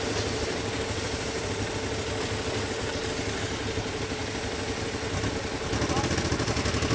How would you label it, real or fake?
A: real